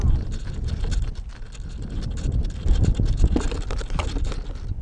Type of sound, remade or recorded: recorded